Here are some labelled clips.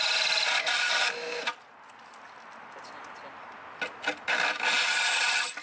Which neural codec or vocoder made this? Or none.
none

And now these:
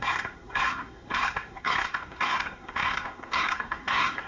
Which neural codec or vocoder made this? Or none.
codec, SNAC